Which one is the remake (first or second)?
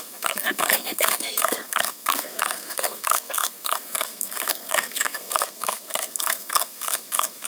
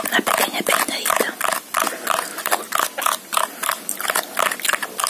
first